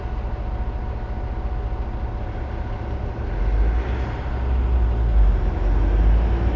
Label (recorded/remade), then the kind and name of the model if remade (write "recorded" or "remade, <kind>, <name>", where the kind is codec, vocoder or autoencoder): recorded